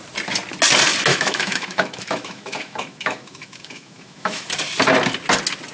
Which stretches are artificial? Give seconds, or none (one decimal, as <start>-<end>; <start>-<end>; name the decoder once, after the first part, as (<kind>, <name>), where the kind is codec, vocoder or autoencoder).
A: 1.1-4.5 (autoencoder, DAC-VAE)